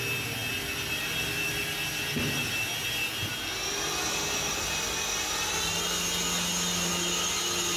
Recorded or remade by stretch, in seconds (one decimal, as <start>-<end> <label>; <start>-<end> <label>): 0.0-7.8 recorded